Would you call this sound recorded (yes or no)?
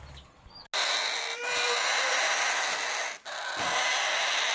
yes